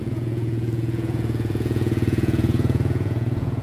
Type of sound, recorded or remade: remade